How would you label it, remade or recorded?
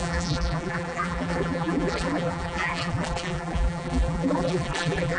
remade